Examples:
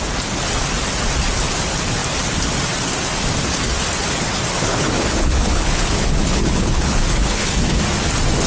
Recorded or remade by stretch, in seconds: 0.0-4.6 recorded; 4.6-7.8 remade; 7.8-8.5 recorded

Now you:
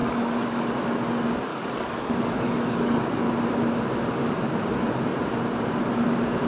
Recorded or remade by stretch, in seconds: 0.0-0.7 remade; 0.7-1.5 recorded; 1.5-3.2 remade; 3.2-6.5 recorded

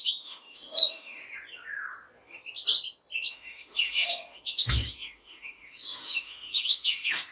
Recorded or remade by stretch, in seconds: 0.0-1.2 remade; 1.2-3.3 recorded; 3.3-7.3 remade

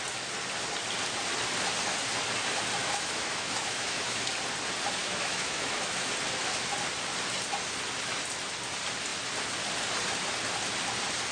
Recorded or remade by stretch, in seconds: 0.0-2.8 recorded; 2.8-4.3 remade; 4.3-5.0 recorded; 5.0-6.1 remade; 6.1-11.3 recorded

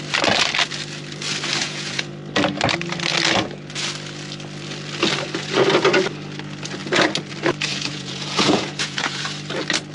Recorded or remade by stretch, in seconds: 0.0-1.6 recorded; 1.6-2.1 remade; 2.1-7.7 recorded; 7.7-9.2 remade; 9.2-9.9 recorded

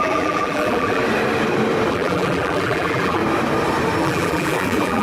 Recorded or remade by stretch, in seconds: 0.0-1.0 remade; 1.0-1.9 recorded; 1.9-3.2 remade; 3.2-4.0 recorded; 4.0-5.0 remade

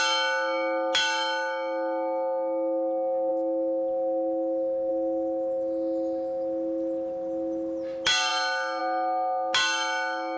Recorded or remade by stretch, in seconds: 0.0-10.4 recorded

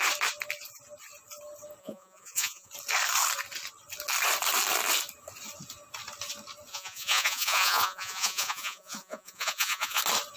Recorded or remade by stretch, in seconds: 0.0-1.8 recorded; 1.8-2.7 remade; 2.7-6.7 recorded; 6.7-10.0 remade; 10.0-10.4 recorded